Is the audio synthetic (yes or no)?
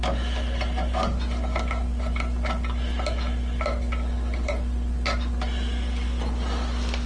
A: no